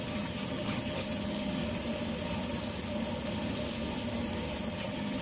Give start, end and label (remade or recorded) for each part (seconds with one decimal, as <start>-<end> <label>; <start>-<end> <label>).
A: 0.0-1.6 remade; 1.6-4.7 recorded; 4.7-5.2 remade